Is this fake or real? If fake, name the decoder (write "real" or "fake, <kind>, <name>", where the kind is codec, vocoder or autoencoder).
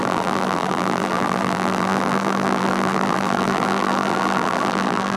fake, vocoder, BigVGAN v2